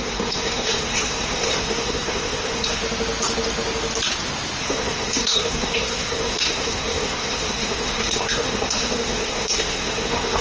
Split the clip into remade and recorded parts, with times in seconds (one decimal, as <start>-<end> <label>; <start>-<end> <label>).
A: 0.0-2.8 remade; 2.8-4.6 recorded; 4.6-10.4 remade